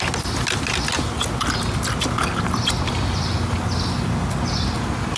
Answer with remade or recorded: recorded